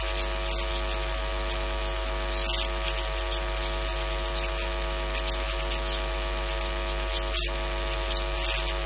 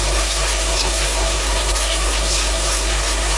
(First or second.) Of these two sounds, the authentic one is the first